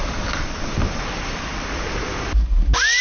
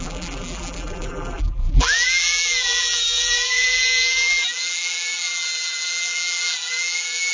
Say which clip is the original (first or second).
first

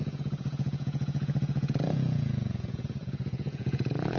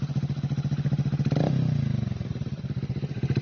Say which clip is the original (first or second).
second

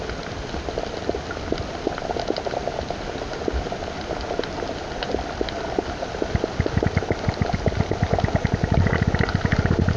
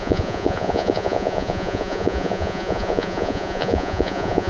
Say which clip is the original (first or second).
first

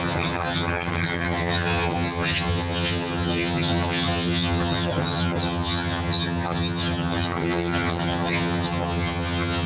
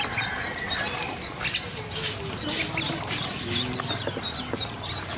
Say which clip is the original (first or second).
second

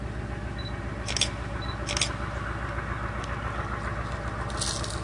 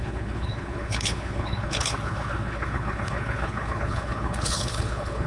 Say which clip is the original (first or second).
first